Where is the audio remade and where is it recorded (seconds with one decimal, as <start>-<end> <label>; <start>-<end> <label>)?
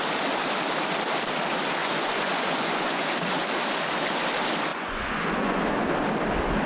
0.0-1.8 recorded; 1.8-3.1 remade; 3.1-4.7 recorded; 4.7-5.6 remade; 5.6-6.7 recorded